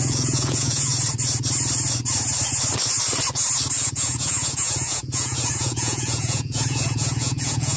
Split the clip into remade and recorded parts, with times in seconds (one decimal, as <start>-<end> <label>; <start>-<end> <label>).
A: 0.0-0.9 remade; 0.9-3.8 recorded; 3.8-7.8 remade